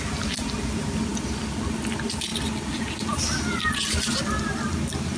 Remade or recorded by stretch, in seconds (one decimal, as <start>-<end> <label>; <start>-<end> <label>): 0.0-5.2 recorded